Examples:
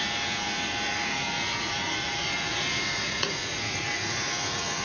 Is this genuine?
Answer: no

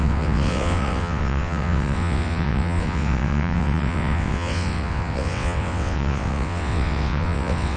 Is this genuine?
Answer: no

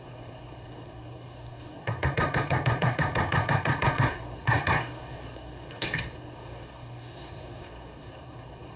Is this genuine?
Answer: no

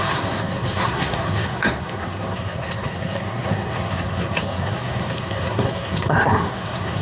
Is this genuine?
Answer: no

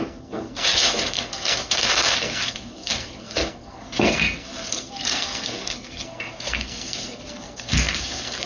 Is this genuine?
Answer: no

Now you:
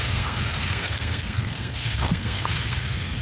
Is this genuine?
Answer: no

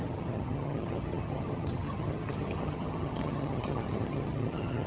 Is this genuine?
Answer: no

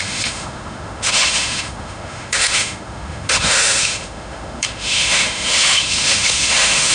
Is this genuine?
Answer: no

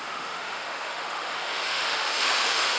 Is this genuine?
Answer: no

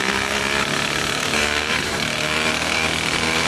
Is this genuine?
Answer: no